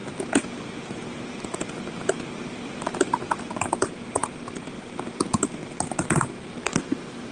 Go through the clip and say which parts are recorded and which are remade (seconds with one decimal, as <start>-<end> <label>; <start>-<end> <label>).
0.0-7.3 recorded